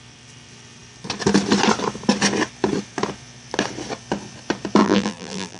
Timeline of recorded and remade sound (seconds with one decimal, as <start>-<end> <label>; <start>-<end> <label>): 0.0-4.8 recorded; 4.8-5.6 remade